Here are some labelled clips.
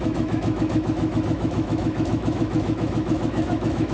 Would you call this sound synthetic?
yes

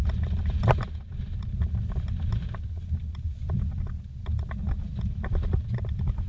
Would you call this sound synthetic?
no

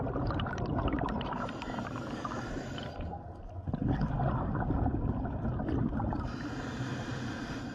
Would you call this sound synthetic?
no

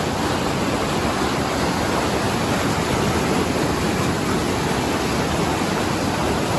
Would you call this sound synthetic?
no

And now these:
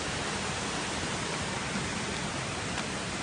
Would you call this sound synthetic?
no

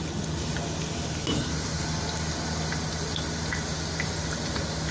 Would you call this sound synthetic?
no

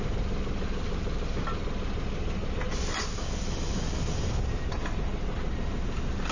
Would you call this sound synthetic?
no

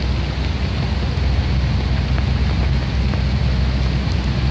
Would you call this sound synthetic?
no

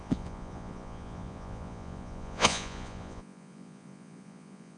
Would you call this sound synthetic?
yes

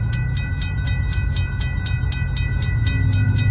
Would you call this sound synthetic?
no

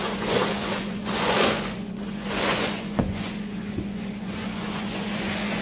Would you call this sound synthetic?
yes